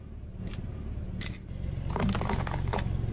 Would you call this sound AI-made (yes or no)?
no